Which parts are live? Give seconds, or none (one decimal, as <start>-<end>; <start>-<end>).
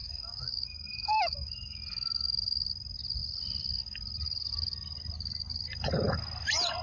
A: 1.8-6.8